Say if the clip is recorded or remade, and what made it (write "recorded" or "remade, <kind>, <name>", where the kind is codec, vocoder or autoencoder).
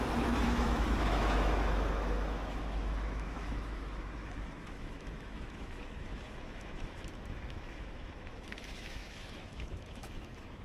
remade, autoencoder, DAC-VAE